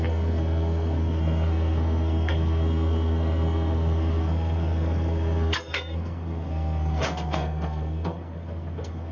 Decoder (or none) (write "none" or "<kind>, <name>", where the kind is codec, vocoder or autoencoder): codec, SNAC